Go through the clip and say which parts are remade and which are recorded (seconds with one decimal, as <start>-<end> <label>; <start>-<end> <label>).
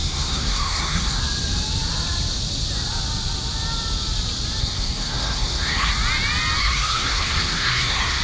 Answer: 0.0-1.2 remade; 1.2-4.6 recorded; 4.6-5.9 remade; 5.9-6.6 recorded; 6.6-8.2 remade